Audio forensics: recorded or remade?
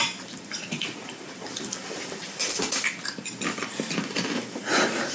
remade